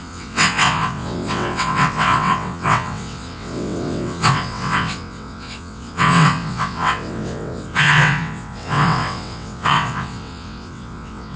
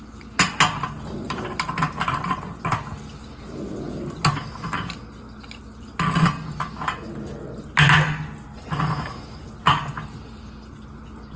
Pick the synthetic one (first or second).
first